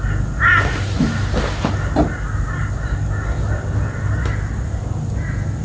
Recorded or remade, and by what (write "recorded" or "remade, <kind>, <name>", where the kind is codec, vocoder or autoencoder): recorded